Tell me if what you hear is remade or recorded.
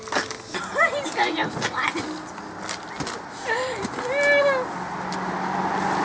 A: recorded